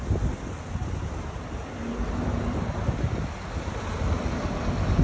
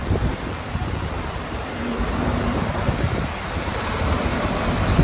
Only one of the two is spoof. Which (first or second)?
second